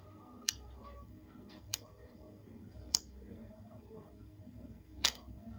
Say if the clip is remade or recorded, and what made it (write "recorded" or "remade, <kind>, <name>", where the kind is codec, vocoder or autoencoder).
remade, codec, SNAC